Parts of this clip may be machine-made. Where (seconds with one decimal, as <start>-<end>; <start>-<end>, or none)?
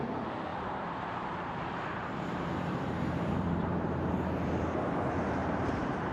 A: 0.5-4.2; 5.4-6.1